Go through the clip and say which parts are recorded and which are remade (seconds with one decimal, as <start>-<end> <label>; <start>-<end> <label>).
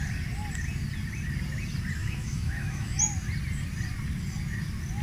0.0-2.0 recorded; 2.0-3.0 remade; 3.0-5.0 recorded